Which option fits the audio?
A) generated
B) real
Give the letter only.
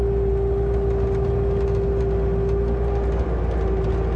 B